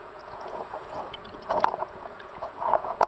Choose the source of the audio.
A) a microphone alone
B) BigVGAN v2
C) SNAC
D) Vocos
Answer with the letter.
D